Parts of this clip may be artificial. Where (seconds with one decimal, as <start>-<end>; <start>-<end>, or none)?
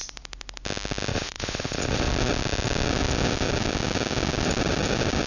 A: 1.1-2.1